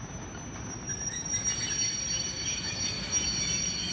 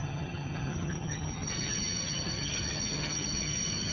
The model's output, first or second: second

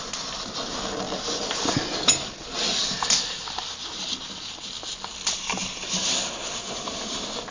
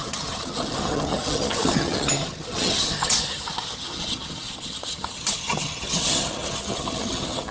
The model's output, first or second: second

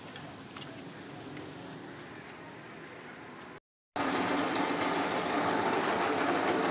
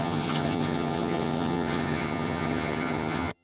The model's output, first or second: second